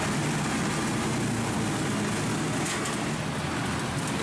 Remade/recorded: recorded